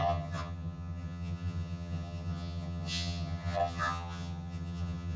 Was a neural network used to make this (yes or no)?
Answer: yes